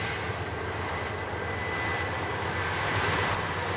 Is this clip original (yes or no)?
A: yes